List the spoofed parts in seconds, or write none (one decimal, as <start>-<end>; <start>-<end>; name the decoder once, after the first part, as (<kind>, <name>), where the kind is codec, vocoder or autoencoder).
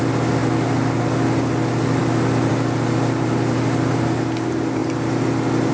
none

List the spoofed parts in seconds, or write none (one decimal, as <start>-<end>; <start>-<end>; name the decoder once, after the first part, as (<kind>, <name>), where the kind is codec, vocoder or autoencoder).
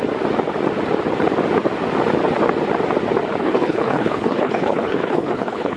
3.4-5.8 (codec, HILCodec)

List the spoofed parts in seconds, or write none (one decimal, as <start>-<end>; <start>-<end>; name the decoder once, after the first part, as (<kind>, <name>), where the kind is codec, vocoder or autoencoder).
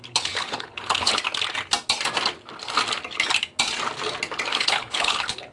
0.0-1.2 (codec, HILCodec); 4.5-5.5